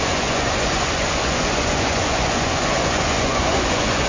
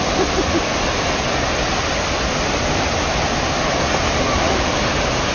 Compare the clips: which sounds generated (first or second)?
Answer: first